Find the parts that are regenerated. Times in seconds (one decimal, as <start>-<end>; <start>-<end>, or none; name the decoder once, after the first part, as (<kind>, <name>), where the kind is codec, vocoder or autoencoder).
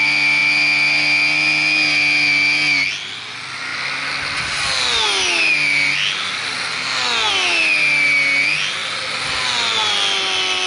none